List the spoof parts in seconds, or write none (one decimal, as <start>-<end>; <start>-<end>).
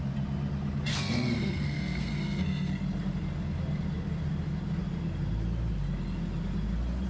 0.9-2.7